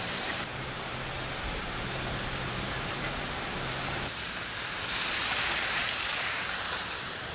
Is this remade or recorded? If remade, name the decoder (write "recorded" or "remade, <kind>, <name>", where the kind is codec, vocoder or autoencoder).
remade, vocoder, BigVGAN v2